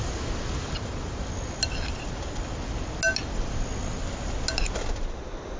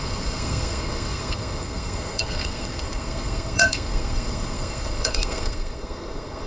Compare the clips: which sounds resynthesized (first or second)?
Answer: second